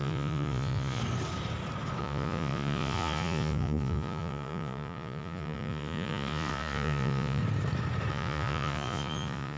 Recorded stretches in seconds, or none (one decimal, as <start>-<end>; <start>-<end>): 1.0-2.0; 7.4-8.1